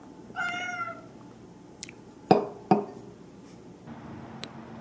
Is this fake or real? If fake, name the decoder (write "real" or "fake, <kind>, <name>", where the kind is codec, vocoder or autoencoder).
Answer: real